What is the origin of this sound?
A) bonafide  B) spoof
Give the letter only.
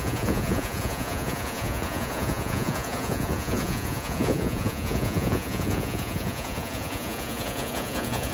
B